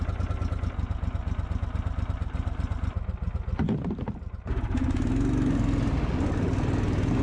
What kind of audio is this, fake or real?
real